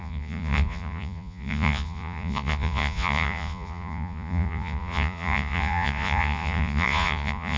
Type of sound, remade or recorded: remade